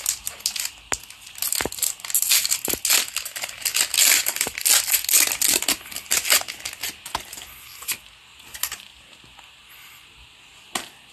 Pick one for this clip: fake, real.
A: real